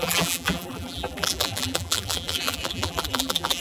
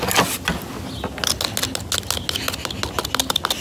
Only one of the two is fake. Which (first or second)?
first